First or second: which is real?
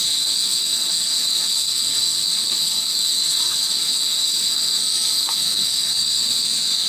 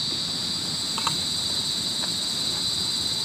second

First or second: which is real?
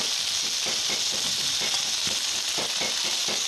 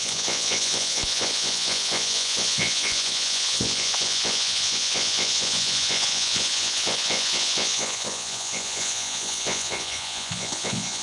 first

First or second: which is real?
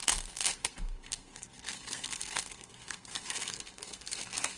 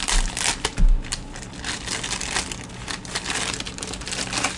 second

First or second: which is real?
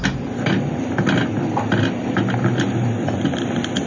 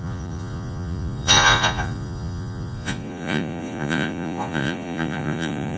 first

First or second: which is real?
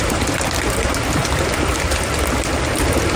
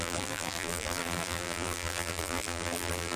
first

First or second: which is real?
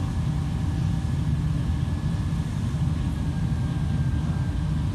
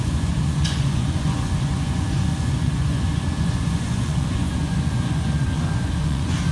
first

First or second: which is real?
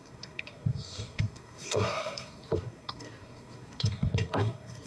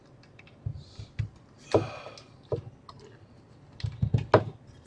second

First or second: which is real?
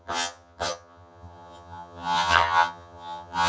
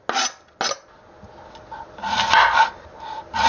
second